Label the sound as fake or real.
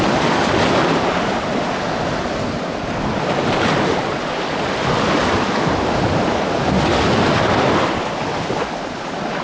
real